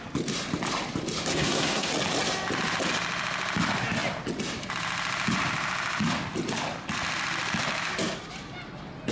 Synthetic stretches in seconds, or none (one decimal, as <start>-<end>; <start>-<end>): 1.3-1.9